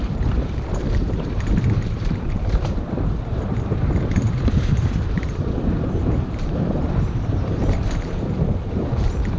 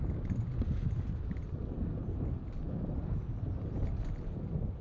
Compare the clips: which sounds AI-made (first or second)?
first